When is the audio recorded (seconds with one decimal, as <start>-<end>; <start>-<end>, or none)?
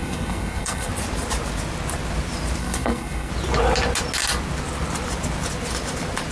0.9-2.6; 3.3-6.3